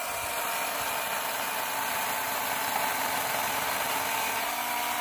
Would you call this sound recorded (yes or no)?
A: yes